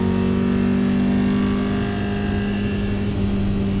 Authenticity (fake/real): real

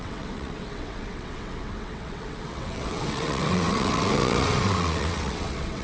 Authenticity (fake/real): fake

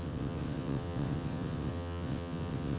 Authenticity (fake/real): fake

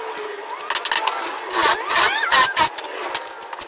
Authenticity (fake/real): real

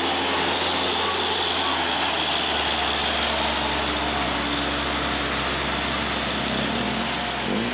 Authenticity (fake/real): real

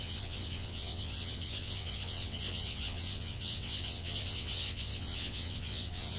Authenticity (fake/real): fake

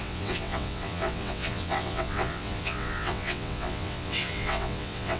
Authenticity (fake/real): fake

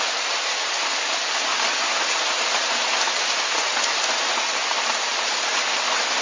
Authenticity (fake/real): real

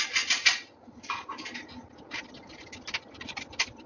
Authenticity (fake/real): real